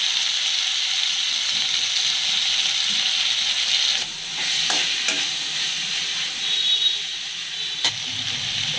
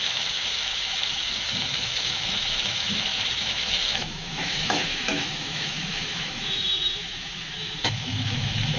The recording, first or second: first